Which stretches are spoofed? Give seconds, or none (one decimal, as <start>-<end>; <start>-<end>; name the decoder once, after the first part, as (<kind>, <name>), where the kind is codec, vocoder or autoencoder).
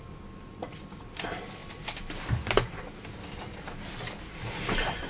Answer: none